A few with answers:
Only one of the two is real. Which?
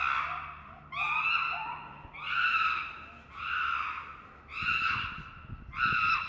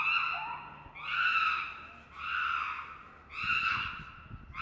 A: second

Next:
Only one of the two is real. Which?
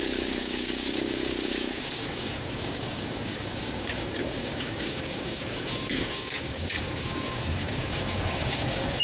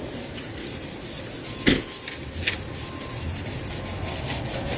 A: second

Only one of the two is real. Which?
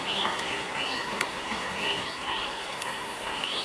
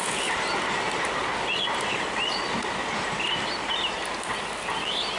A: second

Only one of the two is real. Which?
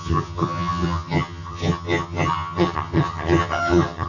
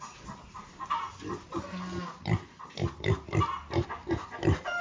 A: second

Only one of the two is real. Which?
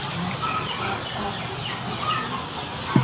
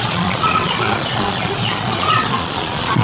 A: first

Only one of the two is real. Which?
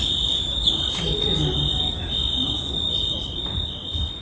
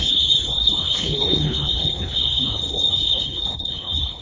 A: first